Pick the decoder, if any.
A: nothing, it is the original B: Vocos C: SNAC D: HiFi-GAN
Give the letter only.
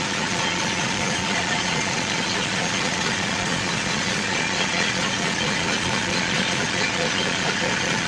B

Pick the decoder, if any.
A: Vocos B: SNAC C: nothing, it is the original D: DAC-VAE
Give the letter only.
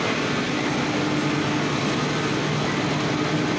C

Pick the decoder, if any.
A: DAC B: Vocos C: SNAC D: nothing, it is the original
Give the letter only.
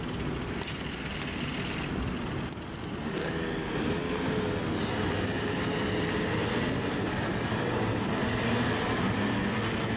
D